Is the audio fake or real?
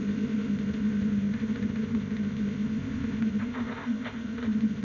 fake